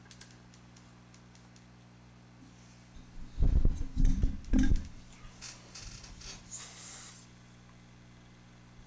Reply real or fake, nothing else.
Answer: real